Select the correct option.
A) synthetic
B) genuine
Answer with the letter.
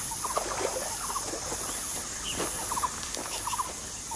B